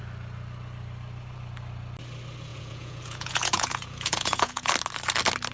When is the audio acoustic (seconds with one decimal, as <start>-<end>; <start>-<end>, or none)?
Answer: 0.0-2.5; 4.7-5.5